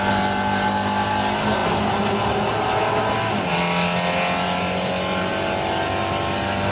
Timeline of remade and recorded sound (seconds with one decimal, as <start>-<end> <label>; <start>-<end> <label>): 0.0-6.7 recorded